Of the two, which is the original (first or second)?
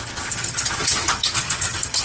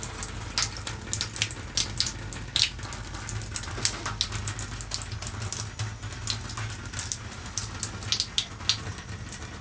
second